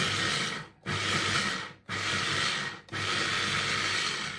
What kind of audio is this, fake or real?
real